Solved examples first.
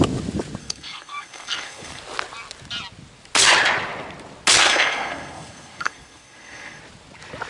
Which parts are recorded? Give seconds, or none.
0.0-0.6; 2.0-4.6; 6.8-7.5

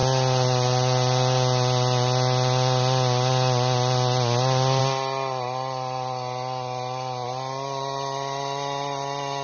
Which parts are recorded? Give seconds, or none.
0.0-9.4

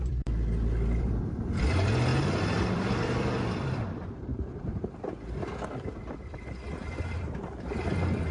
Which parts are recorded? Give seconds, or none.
2.1-2.7

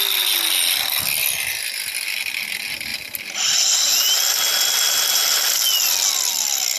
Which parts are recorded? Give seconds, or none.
0.0-6.8

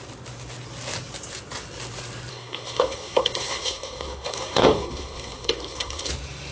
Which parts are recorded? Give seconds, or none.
0.0-2.3; 6.1-6.5

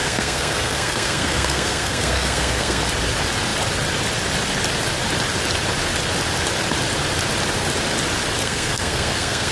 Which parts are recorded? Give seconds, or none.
2.8-8.4

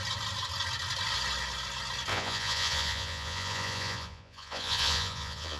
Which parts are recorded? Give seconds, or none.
0.0-2.1